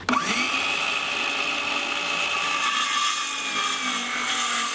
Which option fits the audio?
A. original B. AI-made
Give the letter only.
A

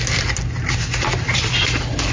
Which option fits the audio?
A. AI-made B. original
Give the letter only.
B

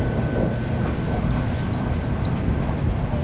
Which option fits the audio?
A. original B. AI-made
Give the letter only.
A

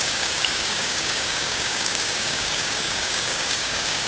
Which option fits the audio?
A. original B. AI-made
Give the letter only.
B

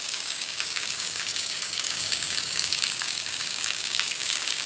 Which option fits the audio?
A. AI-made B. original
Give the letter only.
A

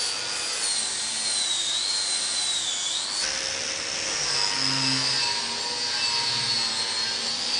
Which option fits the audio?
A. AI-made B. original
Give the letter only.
B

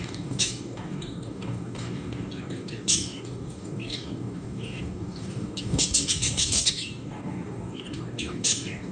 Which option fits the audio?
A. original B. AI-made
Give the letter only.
B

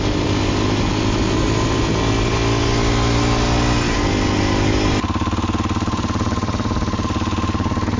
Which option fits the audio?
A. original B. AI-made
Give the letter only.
A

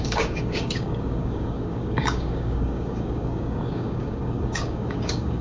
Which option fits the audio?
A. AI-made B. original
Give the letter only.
A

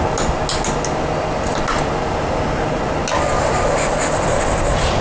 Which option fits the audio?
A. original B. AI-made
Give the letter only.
A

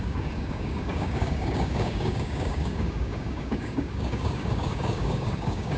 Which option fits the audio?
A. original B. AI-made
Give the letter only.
B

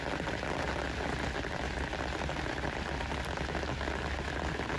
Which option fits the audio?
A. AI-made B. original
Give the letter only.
B